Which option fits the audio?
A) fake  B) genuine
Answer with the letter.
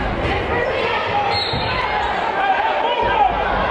B